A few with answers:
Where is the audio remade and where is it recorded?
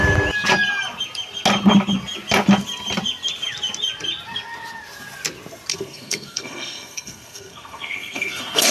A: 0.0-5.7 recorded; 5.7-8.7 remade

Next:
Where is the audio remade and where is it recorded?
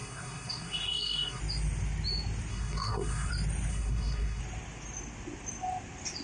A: 0.0-1.4 remade; 1.4-2.5 recorded; 2.5-3.3 remade; 3.3-3.7 recorded; 3.7-4.4 remade; 4.4-6.2 recorded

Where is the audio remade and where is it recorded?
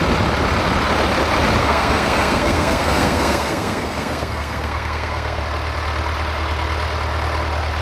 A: 0.0-1.6 recorded; 1.6-5.4 remade; 5.4-7.8 recorded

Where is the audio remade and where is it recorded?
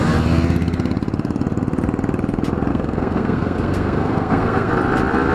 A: 0.0-2.7 recorded; 2.7-4.7 remade; 4.7-5.3 recorded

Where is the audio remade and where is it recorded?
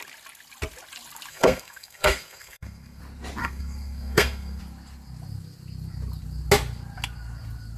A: 0.0-1.3 recorded; 1.3-3.0 remade; 3.0-3.4 recorded; 3.4-4.6 remade; 4.6-7.8 recorded